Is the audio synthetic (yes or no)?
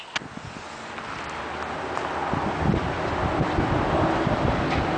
no